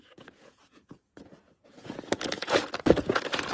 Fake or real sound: fake